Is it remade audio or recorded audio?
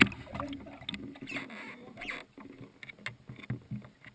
recorded